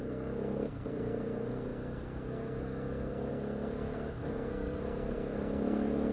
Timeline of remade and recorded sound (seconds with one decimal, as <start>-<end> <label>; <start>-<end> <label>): 0.0-6.1 remade

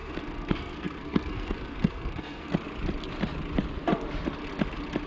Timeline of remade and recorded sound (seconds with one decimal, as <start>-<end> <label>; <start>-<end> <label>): 0.0-2.5 remade; 2.5-5.1 recorded

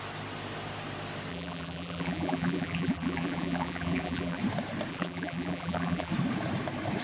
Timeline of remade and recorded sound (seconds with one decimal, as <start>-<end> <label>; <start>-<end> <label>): 0.0-1.3 recorded; 1.3-4.4 remade; 4.4-4.9 recorded; 4.9-6.1 remade; 6.1-7.0 recorded